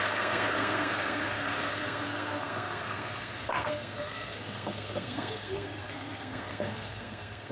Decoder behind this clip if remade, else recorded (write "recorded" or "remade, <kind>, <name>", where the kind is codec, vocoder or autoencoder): remade, codec, SNAC